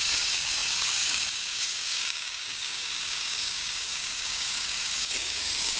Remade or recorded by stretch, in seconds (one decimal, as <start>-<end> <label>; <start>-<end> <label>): 0.0-5.8 remade